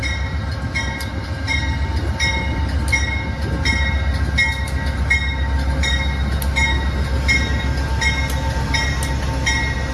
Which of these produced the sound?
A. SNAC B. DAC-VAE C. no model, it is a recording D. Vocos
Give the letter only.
C